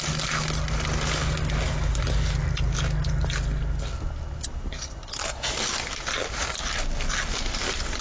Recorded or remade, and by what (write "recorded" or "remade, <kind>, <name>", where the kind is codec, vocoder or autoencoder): recorded